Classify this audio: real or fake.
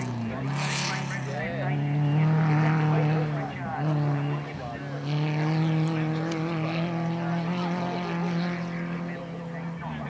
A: real